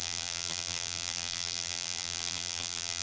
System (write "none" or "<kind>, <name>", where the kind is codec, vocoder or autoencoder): vocoder, BigVGAN v2